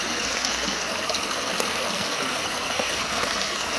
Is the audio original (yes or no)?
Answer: no